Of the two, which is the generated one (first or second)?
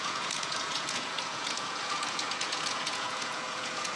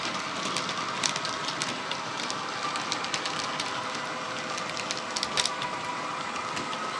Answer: first